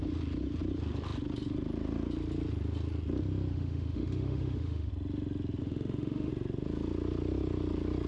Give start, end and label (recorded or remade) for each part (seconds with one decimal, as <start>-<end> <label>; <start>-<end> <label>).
0.0-3.5 recorded; 3.5-4.9 remade; 4.9-5.6 recorded; 5.6-6.3 remade; 6.3-8.1 recorded